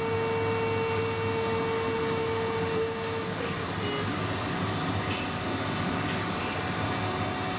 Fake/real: real